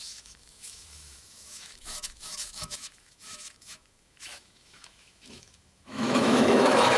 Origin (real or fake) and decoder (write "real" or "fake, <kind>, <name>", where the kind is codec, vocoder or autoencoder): fake, autoencoder, DAC-VAE